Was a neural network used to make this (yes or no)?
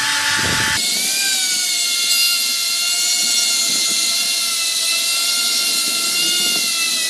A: no